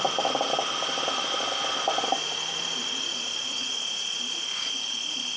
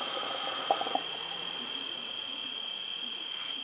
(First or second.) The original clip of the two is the first